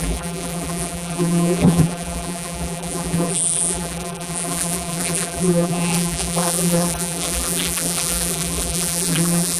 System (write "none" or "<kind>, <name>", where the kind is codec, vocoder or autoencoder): vocoder, BigVGAN v2